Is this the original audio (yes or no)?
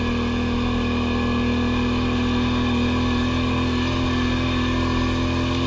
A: yes